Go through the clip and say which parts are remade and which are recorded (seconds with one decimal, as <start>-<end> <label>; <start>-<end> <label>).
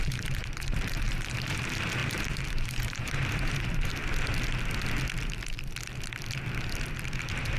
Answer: 0.0-4.0 remade; 4.0-7.6 recorded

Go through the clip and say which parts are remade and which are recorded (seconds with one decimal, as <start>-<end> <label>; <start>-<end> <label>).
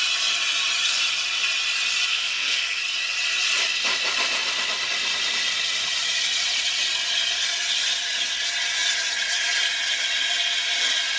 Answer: 0.0-2.1 recorded; 2.1-2.8 remade; 2.8-11.2 recorded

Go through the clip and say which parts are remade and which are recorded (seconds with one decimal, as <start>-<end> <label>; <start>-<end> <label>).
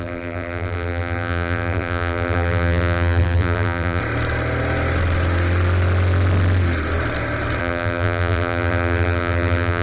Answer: 0.0-4.0 remade; 4.0-7.6 recorded; 7.6-9.8 remade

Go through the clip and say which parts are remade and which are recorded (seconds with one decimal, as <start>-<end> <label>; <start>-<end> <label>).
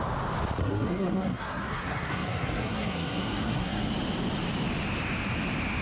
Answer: 0.0-0.6 recorded; 0.6-3.9 remade; 3.9-5.8 recorded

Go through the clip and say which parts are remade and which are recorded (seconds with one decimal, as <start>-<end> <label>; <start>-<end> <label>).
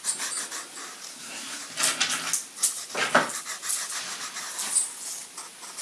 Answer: 0.0-1.1 recorded; 1.1-1.6 remade; 1.6-5.8 recorded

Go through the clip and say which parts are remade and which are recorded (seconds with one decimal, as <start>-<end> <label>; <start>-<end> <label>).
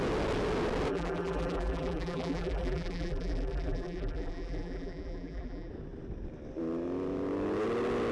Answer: 0.0-0.9 recorded; 0.9-5.7 remade; 5.7-8.1 recorded